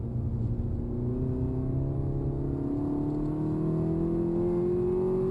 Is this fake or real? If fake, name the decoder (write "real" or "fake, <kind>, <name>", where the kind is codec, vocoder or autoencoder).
real